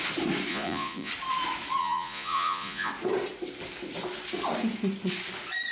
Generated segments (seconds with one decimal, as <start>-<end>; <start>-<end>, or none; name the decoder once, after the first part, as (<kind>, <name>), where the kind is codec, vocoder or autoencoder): 0.5-1.1 (vocoder, Vocos); 1.8-2.9